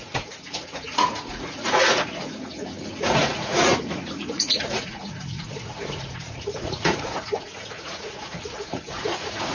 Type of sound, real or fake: fake